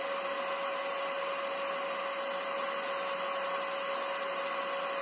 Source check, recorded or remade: recorded